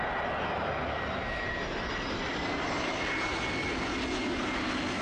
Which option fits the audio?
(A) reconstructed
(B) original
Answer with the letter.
B